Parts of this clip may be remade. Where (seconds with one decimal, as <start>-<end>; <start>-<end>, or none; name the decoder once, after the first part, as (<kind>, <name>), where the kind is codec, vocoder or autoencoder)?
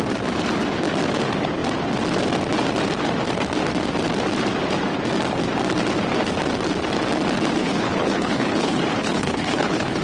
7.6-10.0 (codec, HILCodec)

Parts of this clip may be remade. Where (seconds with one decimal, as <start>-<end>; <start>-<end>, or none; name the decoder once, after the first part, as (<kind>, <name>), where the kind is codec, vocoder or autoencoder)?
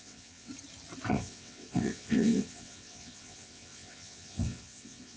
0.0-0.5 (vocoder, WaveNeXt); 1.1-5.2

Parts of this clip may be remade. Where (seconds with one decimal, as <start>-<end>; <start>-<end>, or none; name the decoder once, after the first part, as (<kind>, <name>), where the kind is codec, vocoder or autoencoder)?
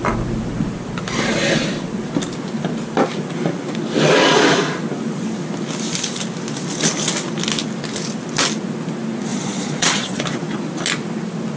9.3-10.2 (vocoder, Vocos)